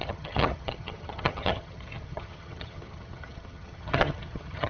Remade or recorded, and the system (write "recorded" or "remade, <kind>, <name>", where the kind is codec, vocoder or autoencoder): remade, vocoder, HiFi-GAN